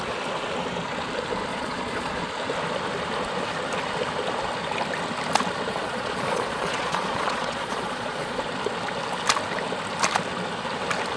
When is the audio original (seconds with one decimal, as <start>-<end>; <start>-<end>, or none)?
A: 0.0-1.5; 2.2-5.7; 8.4-11.2